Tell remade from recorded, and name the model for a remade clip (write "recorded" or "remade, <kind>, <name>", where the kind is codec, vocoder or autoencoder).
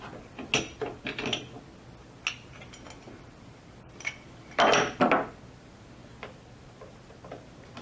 recorded